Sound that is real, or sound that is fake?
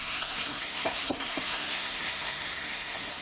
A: fake